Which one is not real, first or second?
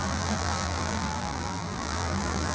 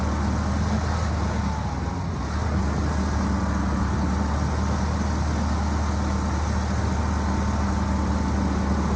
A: first